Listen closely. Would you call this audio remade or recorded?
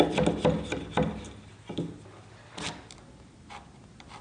recorded